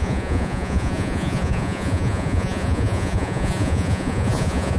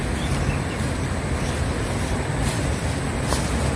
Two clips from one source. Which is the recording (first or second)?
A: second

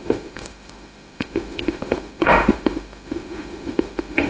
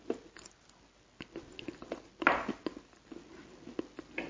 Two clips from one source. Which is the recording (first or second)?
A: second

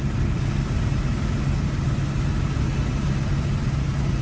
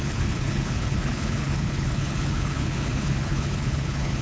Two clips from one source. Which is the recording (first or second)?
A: first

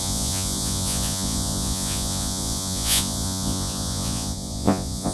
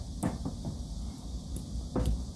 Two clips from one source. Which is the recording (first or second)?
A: second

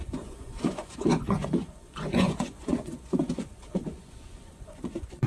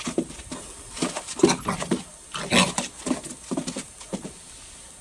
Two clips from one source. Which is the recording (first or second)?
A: second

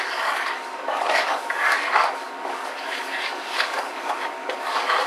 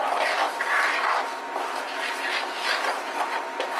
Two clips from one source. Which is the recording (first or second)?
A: second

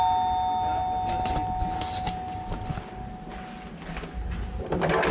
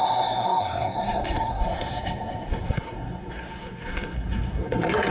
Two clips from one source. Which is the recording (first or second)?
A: first